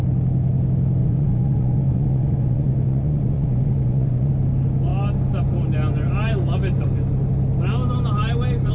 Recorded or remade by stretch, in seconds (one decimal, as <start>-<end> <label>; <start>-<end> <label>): 0.0-1.0 recorded; 1.0-4.3 remade; 4.3-8.7 recorded